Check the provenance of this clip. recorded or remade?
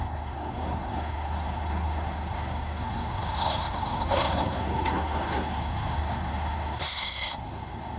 remade